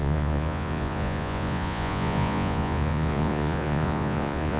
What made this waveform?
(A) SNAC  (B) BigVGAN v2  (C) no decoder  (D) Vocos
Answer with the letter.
D